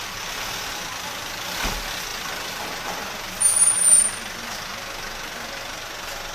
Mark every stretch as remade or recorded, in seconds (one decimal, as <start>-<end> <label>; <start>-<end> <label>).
0.0-6.3 recorded